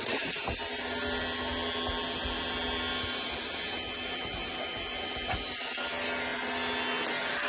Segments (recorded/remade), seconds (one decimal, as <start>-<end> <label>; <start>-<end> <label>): 0.0-7.5 recorded